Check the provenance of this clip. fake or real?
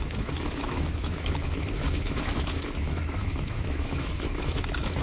fake